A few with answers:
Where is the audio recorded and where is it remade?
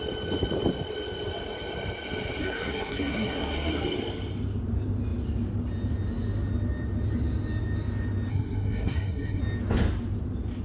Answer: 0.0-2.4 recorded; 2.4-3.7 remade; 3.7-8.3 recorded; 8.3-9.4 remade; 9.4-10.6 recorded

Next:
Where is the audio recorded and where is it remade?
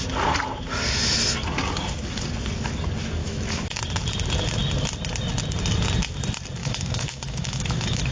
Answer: 0.0-3.2 recorded; 3.2-3.8 remade; 3.8-6.6 recorded; 6.6-8.1 remade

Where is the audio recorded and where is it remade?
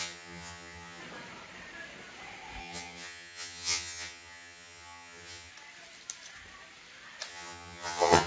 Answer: 0.0-1.0 remade; 1.0-2.6 recorded; 2.6-5.5 remade; 5.5-7.3 recorded; 7.3-8.3 remade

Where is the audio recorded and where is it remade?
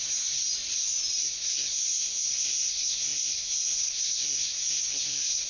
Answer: 0.0-0.4 remade; 0.4-1.2 recorded; 1.2-5.5 remade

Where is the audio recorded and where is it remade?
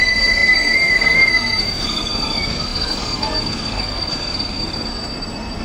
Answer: 0.0-4.9 remade; 4.9-5.6 recorded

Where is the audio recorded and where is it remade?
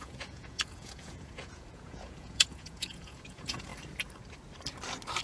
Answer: 0.0-3.7 remade; 3.7-5.2 recorded